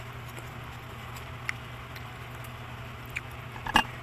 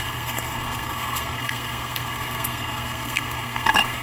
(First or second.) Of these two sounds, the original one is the first